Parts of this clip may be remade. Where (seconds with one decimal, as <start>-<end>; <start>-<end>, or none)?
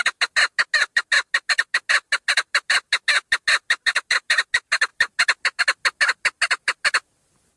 none